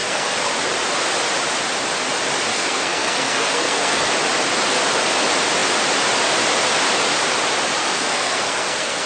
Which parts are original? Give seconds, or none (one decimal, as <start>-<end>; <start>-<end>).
0.5-2.5; 4.1-7.8